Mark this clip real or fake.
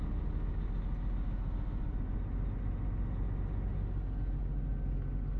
real